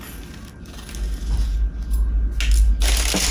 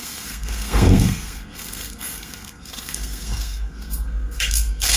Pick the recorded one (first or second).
first